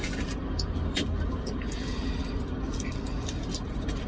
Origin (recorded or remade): remade